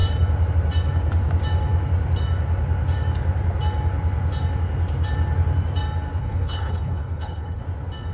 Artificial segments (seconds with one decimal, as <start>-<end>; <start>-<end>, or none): 6.2-7.6